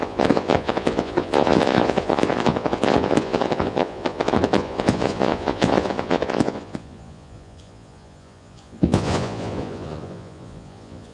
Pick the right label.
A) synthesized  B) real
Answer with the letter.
A